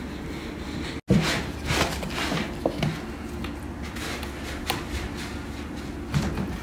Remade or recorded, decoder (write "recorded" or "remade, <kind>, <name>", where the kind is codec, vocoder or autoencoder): recorded